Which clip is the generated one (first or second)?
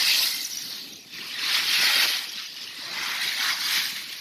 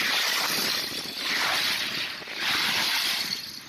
second